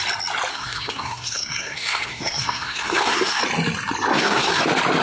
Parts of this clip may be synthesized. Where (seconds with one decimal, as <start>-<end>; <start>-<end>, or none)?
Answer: 0.5-3.4; 4.1-4.6

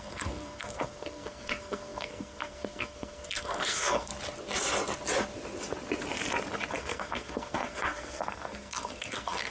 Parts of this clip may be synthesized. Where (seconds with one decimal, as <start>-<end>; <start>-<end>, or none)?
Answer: 0.0-4.1; 6.7-9.5

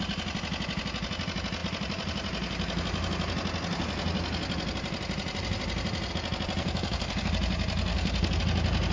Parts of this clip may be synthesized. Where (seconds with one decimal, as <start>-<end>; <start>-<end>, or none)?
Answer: 6.6-7.3; 7.9-8.4

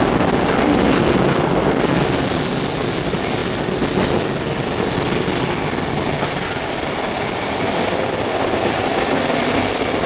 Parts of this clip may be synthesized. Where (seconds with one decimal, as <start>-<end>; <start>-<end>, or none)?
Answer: 1.3-2.0

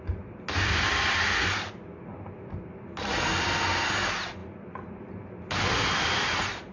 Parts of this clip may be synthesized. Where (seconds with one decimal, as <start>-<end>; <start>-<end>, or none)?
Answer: none

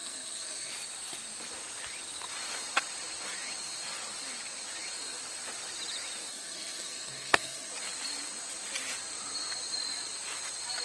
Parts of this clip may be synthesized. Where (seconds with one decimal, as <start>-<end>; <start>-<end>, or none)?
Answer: 0.0-0.7; 6.3-7.7